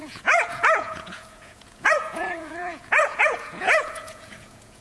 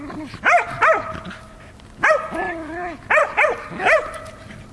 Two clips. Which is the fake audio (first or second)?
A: first